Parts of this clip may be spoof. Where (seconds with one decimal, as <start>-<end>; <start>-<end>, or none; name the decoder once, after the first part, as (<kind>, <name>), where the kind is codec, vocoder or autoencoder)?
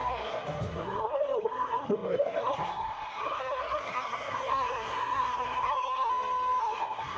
0.0-6.1 (codec, SNAC); 6.6-7.2